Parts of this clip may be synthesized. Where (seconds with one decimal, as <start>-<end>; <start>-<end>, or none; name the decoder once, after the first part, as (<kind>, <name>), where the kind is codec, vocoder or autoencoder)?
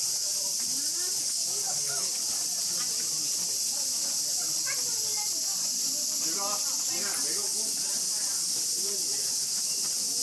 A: 1.2-2.1 (codec, DAC)